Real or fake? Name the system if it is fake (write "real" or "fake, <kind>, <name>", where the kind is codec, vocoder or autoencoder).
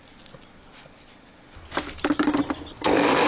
real